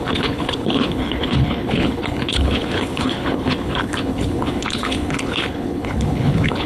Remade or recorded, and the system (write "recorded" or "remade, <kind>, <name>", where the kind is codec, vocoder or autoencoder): remade, codec, HILCodec